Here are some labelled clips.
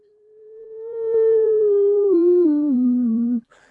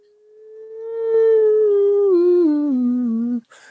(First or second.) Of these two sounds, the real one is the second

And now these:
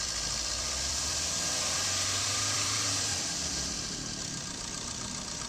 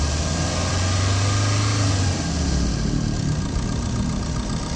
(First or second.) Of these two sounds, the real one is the second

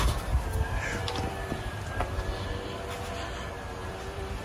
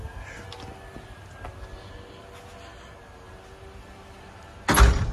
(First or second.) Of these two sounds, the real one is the second